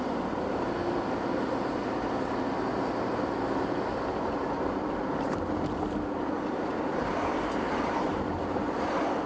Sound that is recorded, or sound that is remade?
recorded